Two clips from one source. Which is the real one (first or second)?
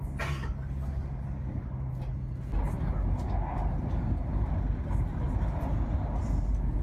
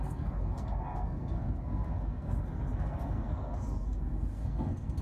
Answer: first